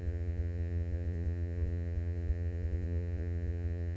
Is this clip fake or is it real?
fake